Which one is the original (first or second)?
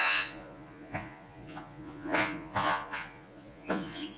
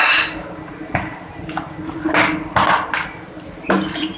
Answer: second